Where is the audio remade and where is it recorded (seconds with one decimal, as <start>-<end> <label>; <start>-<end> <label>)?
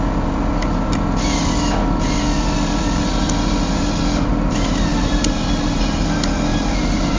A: 0.0-4.9 recorded; 4.9-5.8 remade; 5.8-6.5 recorded; 6.5-7.2 remade